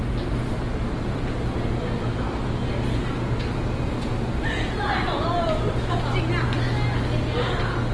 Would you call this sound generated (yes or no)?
no